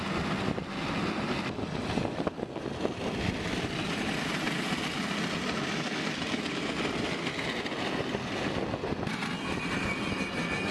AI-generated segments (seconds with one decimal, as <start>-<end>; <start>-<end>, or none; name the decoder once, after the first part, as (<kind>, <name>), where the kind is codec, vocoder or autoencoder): none